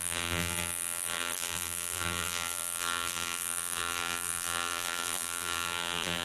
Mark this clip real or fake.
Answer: fake